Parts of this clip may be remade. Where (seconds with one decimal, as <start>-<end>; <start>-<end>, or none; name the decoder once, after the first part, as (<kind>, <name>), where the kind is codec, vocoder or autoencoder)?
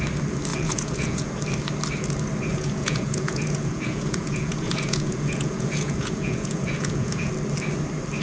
0.5-1.3 (vocoder, Vocos); 2.5-7.3